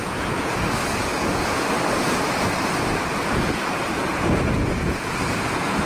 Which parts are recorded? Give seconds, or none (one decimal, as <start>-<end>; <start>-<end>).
0.6-1.0; 1.7-3.0